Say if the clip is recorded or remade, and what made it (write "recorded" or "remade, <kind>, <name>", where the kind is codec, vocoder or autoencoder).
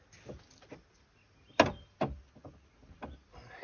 recorded